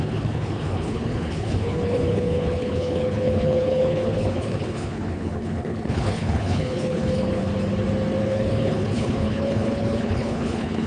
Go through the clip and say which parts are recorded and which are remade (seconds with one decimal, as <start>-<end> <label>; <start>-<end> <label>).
0.0-7.5 remade; 7.5-8.2 recorded; 8.2-10.9 remade